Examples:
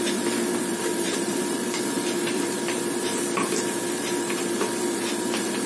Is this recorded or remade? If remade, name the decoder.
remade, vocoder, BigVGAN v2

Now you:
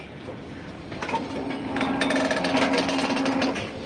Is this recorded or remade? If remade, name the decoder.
recorded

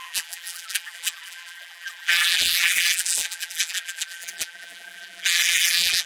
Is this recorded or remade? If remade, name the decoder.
remade, vocoder, BigVGAN v2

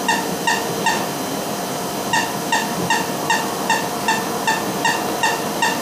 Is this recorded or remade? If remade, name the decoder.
recorded